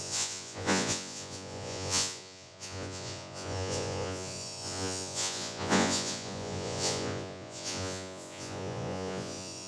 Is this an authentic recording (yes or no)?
no